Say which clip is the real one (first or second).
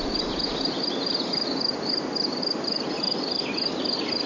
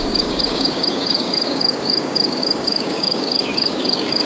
first